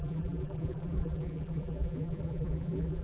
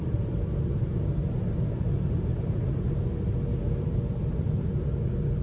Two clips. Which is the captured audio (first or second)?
second